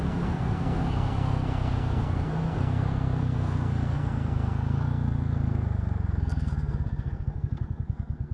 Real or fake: fake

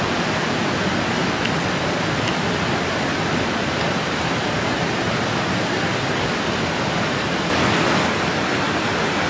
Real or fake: real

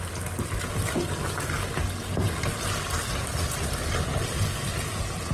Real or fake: real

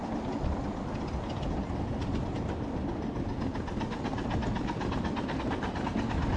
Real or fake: real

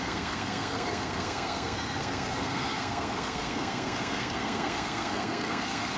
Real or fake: fake